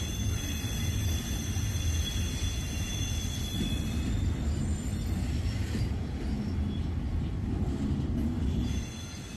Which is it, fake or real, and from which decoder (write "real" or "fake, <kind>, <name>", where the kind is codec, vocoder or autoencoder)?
real